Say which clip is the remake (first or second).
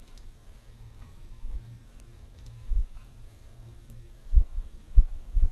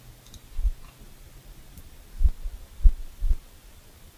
first